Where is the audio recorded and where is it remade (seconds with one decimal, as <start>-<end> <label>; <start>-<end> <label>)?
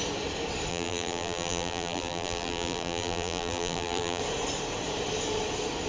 0.0-0.7 recorded; 0.7-4.2 remade; 4.2-5.9 recorded